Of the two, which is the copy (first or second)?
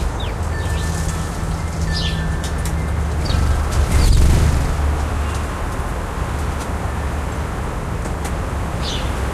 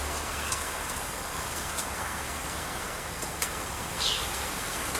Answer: second